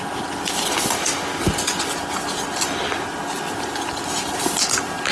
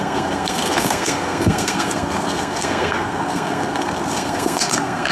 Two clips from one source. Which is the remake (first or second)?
second